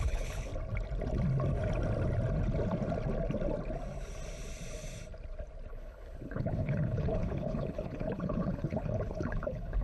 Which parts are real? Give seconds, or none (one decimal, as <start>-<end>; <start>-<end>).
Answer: 0.5-5.7